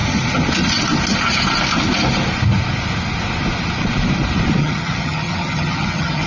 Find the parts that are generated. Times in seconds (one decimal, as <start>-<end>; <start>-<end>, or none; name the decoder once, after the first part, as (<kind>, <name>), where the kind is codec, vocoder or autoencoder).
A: 4.6-6.3 (vocoder, HiFi-GAN)